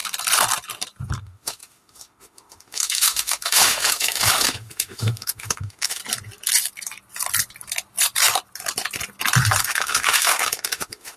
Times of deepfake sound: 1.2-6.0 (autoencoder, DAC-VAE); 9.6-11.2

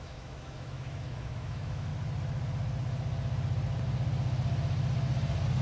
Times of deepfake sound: 0.0-1.9 (autoencoder, DAC-VAE)

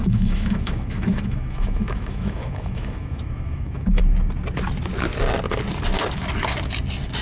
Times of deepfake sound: 0.0-4.0 (autoencoder, DAC-VAE)

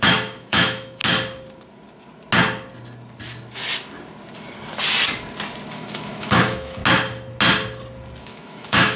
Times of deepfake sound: 0.0-1.0 (autoencoder, DAC-VAE); 5.7-6.8; 8.2-9.0

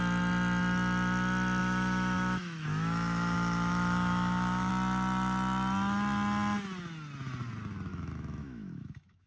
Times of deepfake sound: 1.6-4.7 (autoencoder, DAC-VAE); 7.9-9.3

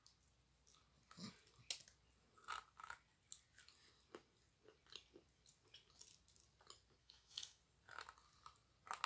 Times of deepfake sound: 7.0-7.6 (autoencoder, DAC-VAE)